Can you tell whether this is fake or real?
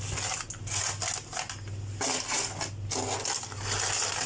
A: real